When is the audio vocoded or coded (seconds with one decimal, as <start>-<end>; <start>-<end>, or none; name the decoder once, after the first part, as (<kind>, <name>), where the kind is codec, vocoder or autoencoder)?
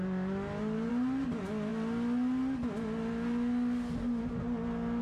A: none